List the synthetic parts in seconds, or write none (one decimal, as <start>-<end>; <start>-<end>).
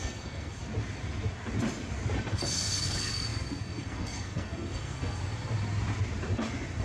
0.0-0.6; 2.3-5.2